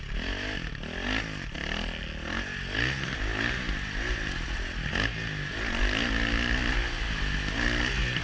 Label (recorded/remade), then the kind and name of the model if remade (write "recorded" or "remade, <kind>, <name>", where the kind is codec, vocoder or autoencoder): recorded